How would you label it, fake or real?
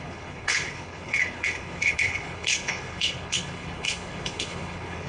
fake